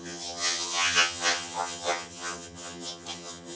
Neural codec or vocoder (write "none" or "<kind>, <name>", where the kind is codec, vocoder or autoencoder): vocoder, HiFi-GAN